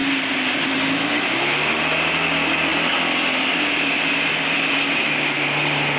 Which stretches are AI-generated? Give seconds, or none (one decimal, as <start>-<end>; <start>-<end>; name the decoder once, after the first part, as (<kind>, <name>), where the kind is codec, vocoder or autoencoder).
none